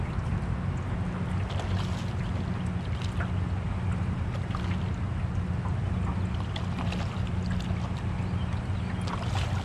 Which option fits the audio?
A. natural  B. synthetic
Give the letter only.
A